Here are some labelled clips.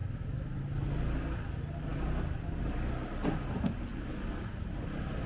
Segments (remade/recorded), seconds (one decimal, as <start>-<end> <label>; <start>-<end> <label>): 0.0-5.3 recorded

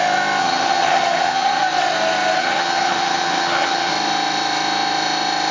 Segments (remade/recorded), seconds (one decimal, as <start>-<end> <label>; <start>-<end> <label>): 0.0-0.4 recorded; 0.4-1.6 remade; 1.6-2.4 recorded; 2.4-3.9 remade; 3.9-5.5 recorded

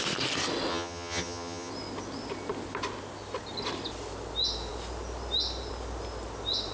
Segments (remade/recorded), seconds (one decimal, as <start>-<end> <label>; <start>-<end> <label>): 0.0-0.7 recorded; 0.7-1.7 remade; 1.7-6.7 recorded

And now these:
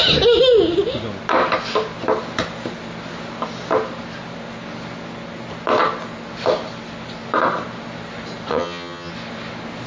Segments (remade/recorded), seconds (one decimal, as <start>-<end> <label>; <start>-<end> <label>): 0.0-8.5 recorded; 8.5-9.1 remade; 9.1-9.9 recorded

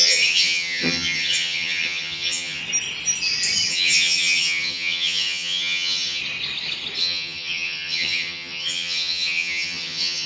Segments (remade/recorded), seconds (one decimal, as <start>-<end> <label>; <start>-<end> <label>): 0.0-2.6 remade; 2.6-3.7 recorded; 3.7-6.2 remade; 6.2-7.0 recorded; 7.0-10.3 remade

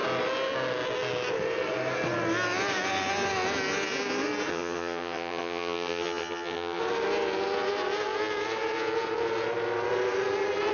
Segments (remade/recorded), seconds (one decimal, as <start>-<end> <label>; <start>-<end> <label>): 0.0-4.5 recorded; 4.5-6.8 remade; 6.8-10.7 recorded